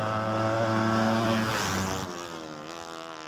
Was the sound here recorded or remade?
recorded